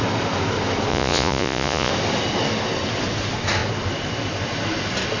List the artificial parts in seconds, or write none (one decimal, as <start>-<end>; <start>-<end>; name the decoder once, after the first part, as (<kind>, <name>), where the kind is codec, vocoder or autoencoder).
0.9-1.9 (vocoder, Vocos)